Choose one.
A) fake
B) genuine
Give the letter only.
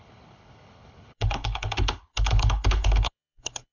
A